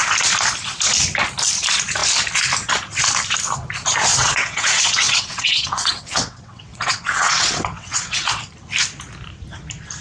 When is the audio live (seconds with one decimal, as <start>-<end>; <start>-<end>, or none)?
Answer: 0.0-4.1; 8.4-10.0

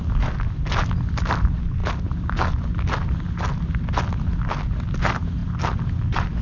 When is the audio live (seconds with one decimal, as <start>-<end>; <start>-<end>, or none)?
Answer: 0.0-6.4